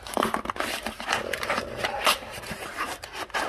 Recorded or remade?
remade